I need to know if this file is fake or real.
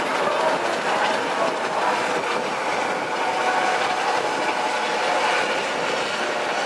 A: real